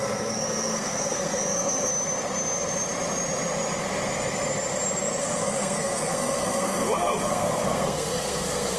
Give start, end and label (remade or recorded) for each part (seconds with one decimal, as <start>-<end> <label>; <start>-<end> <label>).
0.0-1.9 remade; 1.9-5.2 recorded; 5.2-8.8 remade